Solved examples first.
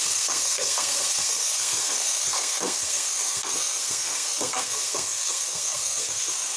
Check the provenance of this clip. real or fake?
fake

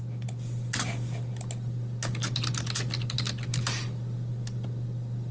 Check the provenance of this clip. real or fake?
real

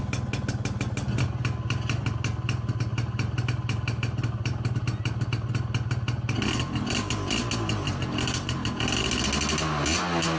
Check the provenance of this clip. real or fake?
real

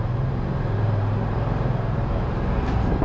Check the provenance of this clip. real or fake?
fake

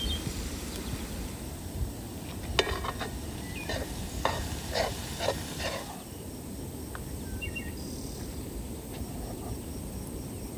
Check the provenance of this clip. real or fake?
real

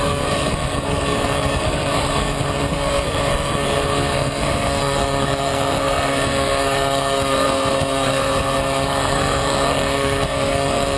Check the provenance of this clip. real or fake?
fake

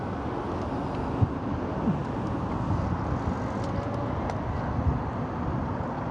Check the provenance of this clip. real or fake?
real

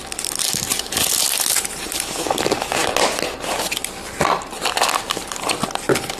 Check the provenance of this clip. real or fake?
real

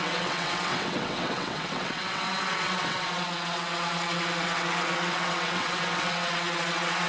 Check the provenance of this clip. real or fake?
fake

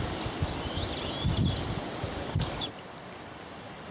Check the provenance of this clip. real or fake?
real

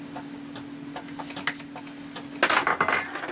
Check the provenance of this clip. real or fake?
real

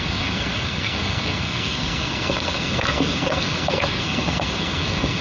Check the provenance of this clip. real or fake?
fake